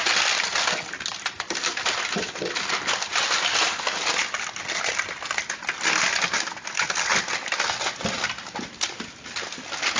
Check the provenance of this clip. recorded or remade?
recorded